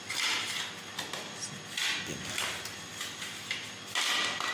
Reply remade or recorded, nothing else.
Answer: recorded